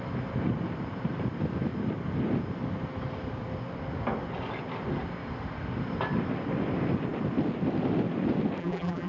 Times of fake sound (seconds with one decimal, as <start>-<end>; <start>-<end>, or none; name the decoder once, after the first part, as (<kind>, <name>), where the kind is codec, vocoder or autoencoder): 8.6-9.1 (vocoder, BigVGAN v2)